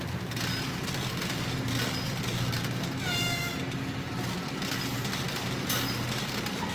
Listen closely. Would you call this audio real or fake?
real